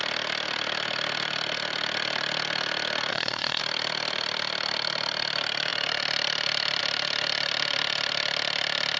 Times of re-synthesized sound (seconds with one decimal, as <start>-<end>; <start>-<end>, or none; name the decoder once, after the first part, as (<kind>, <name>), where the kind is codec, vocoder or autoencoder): 3.1-3.6 (codec, SNAC)